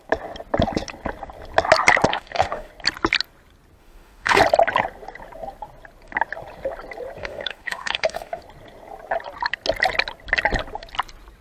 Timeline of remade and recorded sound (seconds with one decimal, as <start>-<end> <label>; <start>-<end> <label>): 0.0-2.1 recorded; 2.1-2.7 remade; 2.7-3.8 recorded; 3.8-4.4 remade; 4.4-7.2 recorded; 7.2-8.4 remade; 8.4-11.4 recorded